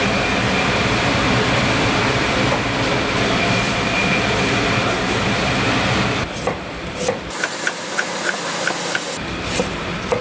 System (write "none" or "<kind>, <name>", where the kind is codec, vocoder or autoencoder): vocoder, BigVGAN v2